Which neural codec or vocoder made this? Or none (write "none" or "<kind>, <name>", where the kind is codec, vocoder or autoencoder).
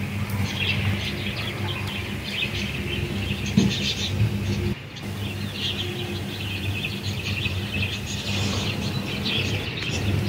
none